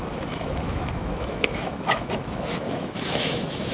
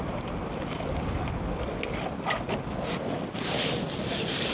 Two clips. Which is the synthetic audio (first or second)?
first